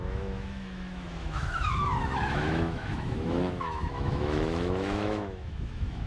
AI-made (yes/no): yes